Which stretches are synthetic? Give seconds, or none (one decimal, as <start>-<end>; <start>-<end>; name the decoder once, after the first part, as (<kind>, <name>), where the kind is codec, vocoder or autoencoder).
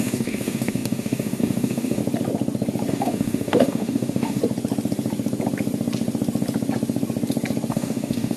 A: 0.0-2.0 (codec, DAC); 2.9-4.4; 7.7-8.4